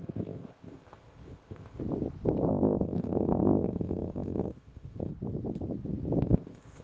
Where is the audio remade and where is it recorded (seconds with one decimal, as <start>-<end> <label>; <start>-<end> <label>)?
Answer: 0.0-1.8 remade; 1.8-2.5 recorded; 2.5-5.1 remade; 5.1-6.2 recorded; 6.2-6.8 remade